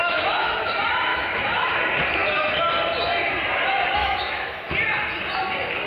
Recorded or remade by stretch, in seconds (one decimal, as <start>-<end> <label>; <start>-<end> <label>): 0.0-0.7 remade; 0.7-1.1 recorded; 1.1-1.8 remade; 1.8-4.0 recorded; 4.0-4.7 remade; 4.7-5.9 recorded